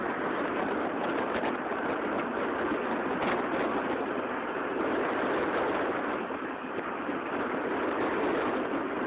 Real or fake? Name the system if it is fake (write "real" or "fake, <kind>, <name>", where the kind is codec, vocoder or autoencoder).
real